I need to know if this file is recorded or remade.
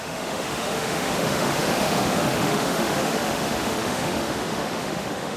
remade